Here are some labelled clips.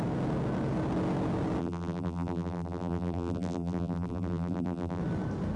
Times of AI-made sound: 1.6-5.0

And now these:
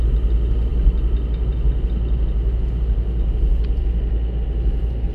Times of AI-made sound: none

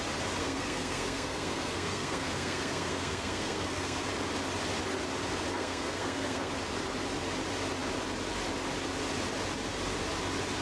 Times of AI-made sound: 0.4-4.1; 5.5-6.5

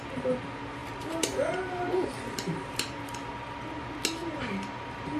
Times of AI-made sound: 0.8-3.0; 4.2-5.2

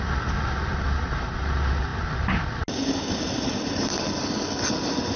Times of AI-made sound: 0.7-1.4